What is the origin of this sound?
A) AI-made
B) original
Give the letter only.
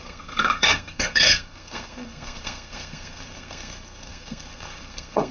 A